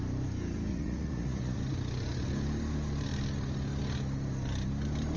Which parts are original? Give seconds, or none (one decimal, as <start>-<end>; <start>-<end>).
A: 0.0-0.7; 1.6-5.2